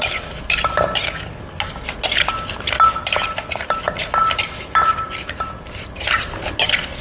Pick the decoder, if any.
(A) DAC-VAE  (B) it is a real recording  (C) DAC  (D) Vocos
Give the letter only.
B